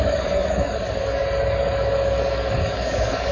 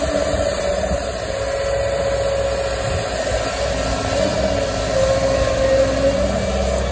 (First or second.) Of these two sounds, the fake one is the first